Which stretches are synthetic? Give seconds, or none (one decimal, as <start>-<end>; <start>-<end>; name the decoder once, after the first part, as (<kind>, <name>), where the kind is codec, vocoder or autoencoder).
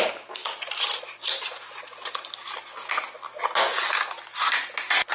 none